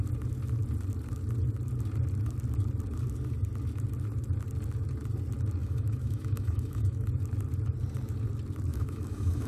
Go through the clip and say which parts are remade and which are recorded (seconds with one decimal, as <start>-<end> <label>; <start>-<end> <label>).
0.0-5.6 recorded; 5.6-7.1 remade; 7.1-8.7 recorded; 8.7-9.5 remade